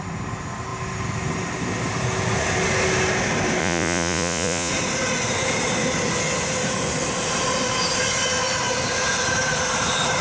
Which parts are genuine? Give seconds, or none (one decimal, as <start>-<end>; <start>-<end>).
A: 0.0-3.6; 4.7-10.2